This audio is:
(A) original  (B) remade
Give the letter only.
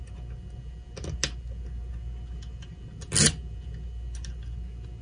A